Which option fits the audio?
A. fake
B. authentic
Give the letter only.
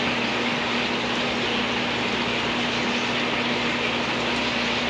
B